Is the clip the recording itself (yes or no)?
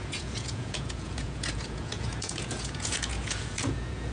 no